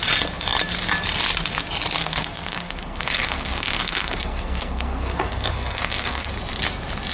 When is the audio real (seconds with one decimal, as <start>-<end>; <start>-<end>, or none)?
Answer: 0.0-2.0; 6.3-7.1